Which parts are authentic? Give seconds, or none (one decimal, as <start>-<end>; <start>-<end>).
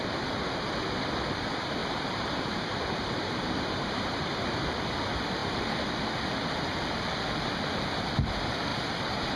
0.0-1.8; 4.4-8.7